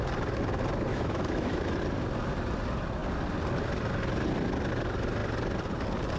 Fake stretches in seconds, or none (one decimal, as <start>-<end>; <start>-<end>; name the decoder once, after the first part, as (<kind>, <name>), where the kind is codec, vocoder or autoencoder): 0.9-1.8 (autoencoder, DAC-VAE)